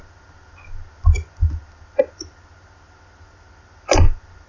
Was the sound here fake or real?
real